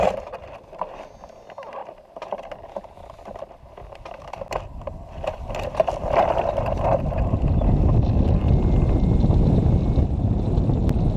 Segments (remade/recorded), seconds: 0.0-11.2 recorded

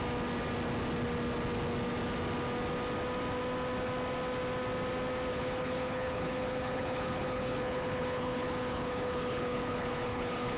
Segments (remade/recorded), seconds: 0.0-5.3 recorded; 5.3-10.6 remade

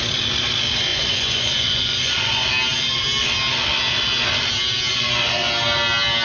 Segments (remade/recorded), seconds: 0.0-0.9 recorded; 0.9-2.5 remade; 2.5-4.9 recorded; 4.9-5.5 remade; 5.5-6.2 recorded

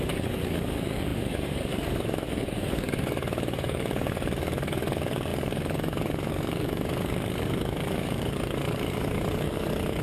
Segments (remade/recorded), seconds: 0.0-10.0 remade

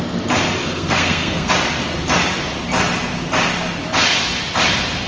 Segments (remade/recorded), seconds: 0.0-0.6 recorded; 0.6-1.5 remade; 1.5-5.1 recorded

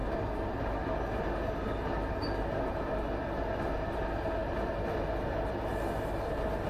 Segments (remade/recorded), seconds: 0.0-6.7 recorded